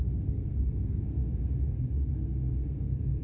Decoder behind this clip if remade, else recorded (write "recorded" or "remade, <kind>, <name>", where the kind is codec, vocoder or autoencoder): remade, codec, SNAC